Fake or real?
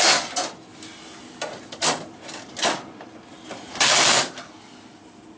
real